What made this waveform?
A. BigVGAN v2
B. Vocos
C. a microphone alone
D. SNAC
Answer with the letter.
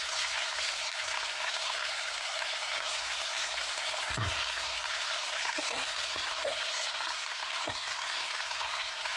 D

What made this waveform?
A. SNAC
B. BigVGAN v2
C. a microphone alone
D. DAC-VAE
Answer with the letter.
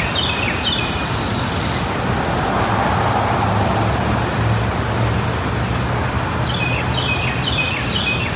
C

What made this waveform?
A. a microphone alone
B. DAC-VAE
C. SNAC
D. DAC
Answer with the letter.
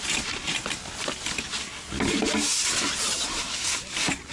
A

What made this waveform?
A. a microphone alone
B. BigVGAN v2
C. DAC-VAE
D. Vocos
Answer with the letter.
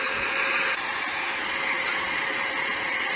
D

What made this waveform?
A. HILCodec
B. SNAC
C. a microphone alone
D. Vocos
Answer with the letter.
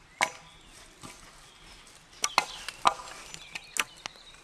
C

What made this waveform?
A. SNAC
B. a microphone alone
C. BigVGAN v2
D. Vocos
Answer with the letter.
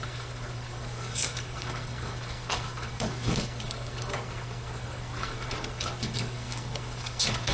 A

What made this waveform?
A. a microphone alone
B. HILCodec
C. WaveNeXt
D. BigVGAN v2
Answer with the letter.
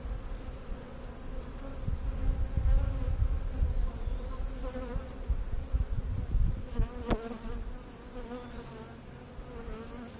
A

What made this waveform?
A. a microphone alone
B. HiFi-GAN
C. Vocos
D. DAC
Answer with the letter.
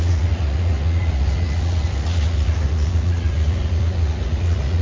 C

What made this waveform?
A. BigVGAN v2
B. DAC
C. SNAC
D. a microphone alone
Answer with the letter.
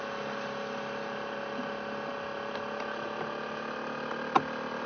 D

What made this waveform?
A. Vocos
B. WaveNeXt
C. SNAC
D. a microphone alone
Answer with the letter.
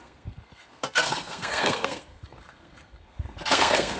C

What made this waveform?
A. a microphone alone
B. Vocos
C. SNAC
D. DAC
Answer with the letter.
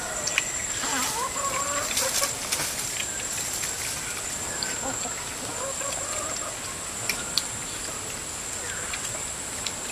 A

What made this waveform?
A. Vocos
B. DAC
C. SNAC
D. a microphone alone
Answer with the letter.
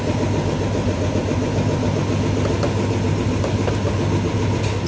D